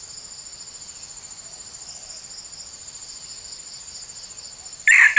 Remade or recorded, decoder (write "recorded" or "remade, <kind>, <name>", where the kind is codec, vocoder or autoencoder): recorded